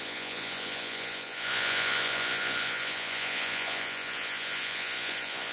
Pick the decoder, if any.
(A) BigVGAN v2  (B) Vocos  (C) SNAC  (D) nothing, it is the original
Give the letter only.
B